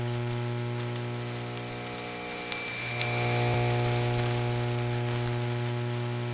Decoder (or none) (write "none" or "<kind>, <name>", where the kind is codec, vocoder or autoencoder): none